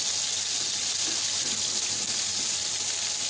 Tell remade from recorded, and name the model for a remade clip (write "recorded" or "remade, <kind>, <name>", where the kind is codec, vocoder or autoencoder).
recorded